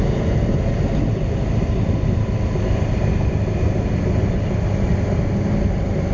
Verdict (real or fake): real